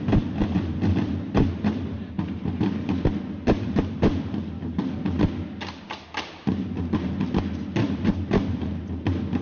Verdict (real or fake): real